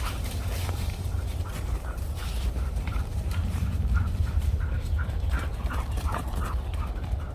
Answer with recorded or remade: remade